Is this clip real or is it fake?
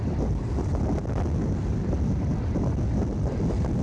real